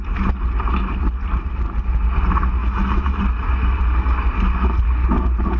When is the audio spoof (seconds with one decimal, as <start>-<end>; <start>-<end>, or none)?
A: 2.6-3.2